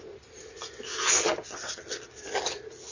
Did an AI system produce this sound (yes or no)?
no